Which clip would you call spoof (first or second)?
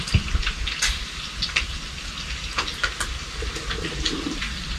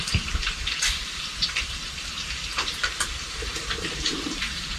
second